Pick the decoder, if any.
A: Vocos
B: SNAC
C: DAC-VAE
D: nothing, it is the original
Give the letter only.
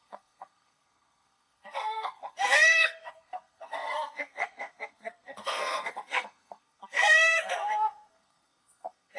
B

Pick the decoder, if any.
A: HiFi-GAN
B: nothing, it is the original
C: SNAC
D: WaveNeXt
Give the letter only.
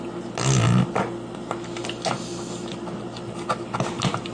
B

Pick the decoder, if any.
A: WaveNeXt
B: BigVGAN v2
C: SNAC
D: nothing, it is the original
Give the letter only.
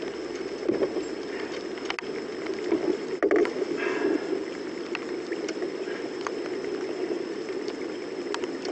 D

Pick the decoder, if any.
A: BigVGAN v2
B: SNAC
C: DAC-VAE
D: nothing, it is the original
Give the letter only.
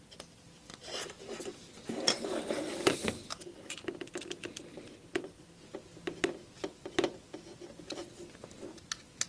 D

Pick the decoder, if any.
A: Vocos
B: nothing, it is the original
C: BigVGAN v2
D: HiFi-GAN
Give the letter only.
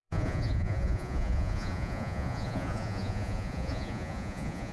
A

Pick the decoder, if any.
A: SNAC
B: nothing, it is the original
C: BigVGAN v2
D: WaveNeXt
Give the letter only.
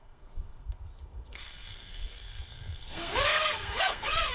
A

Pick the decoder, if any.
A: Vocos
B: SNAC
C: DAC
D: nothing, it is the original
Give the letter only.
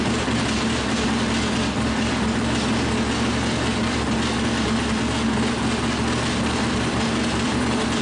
D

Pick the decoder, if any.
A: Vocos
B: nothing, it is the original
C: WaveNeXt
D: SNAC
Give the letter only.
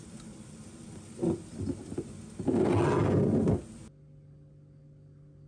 B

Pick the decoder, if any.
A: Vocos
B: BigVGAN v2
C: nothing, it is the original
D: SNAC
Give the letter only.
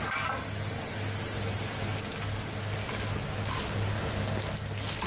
C